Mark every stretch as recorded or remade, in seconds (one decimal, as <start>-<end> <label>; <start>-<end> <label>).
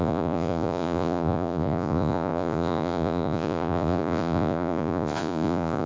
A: 0.0-5.9 remade